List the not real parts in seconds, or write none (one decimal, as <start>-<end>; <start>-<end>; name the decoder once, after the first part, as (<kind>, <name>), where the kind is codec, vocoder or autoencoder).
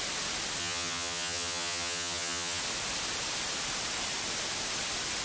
0.6-2.6 (vocoder, HiFi-GAN)